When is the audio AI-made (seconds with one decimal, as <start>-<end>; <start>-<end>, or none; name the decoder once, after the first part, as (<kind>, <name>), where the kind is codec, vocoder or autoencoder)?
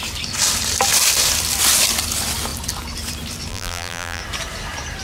3.5-4.2 (vocoder, BigVGAN v2)